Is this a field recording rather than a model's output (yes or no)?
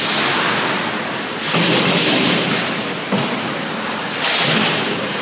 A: yes